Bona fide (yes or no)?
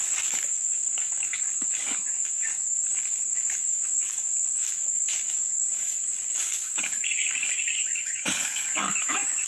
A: no